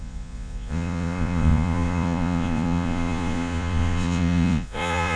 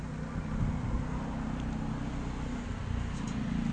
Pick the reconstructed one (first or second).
first